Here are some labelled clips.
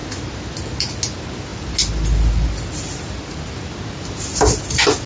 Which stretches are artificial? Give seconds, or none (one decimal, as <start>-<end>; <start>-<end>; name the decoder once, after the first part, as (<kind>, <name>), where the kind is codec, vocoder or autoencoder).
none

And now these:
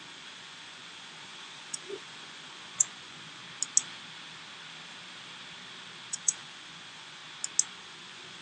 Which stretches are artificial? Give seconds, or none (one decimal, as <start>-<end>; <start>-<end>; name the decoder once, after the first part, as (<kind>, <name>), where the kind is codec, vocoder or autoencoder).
0.0-3.4 (vocoder, Vocos); 6.1-7.2; 7.7-8.4

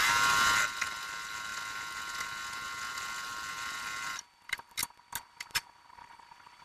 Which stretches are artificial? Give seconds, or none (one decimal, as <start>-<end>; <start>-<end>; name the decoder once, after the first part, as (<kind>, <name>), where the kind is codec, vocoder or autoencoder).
0.0-1.5 (vocoder, BigVGAN v2); 2.9-4.8; 5.3-6.6